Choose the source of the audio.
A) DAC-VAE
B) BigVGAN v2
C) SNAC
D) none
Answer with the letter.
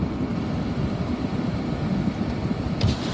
D